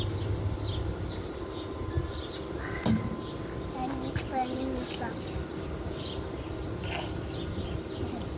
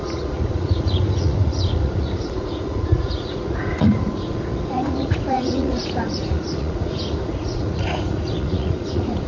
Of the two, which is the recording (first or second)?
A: first